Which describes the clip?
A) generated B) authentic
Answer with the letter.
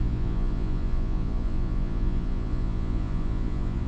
A